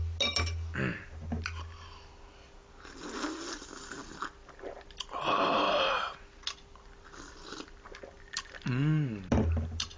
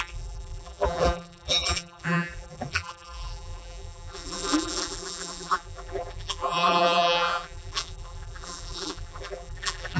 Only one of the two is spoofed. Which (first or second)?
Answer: second